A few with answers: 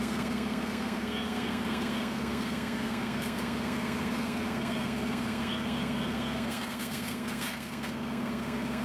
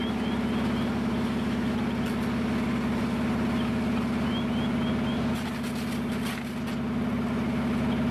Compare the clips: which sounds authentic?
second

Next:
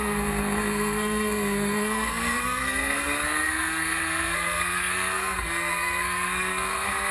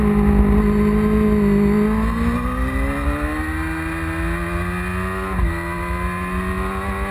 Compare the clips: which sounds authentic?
second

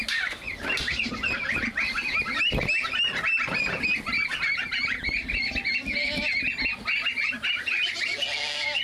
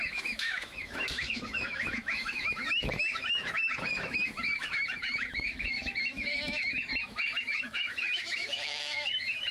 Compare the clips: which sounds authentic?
first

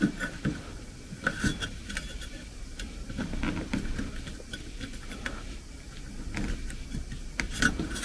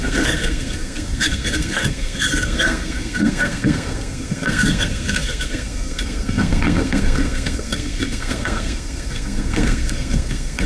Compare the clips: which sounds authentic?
first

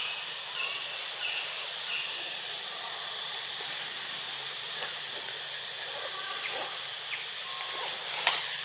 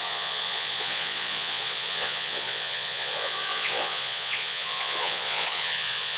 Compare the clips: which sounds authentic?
first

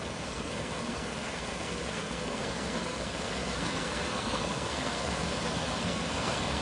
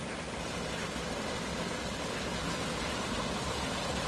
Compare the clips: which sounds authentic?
second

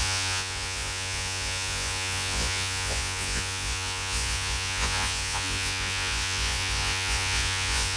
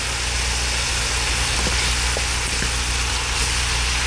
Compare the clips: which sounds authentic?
second